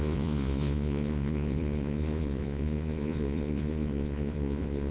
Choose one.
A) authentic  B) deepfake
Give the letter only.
B